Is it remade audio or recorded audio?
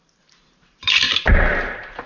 remade